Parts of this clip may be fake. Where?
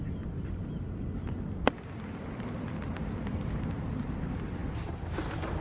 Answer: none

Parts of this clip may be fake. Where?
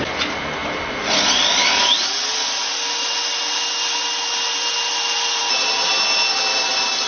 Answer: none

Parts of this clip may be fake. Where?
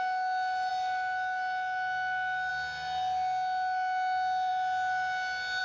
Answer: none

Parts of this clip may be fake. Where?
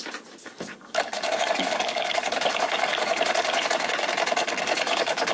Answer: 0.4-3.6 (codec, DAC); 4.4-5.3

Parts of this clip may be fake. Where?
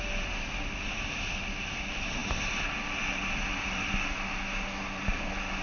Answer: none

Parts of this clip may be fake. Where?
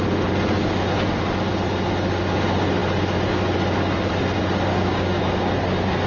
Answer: 4.7-5.5 (codec, DAC)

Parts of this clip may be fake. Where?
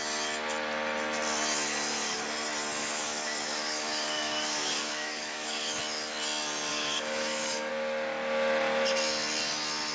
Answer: 2.8-5.8 (codec, DAC); 6.7-7.7